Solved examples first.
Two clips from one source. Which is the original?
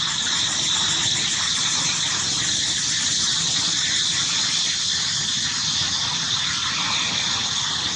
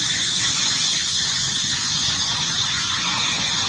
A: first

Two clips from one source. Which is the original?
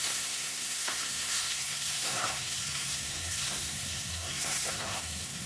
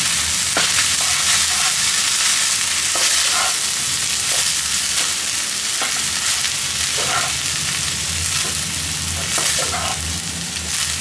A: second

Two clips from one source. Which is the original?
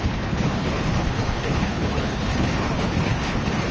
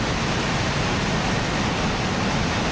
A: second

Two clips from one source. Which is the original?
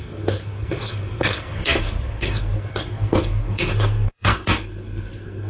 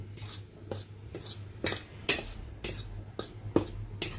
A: second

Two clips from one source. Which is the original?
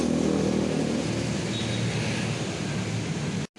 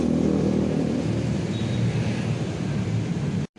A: first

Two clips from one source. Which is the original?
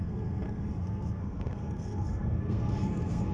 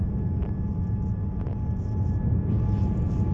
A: second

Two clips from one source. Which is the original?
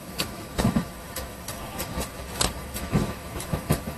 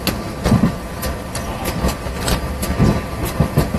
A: second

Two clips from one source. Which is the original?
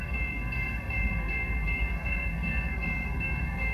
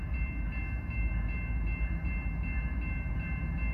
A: second